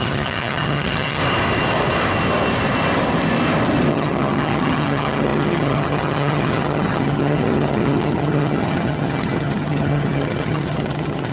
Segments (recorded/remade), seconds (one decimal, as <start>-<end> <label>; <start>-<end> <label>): 0.0-1.2 remade; 1.2-3.9 recorded; 3.9-11.3 remade